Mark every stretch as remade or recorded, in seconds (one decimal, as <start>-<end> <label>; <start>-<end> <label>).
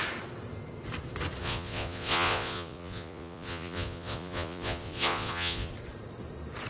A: 0.0-1.4 recorded; 1.4-5.7 remade; 5.7-6.7 recorded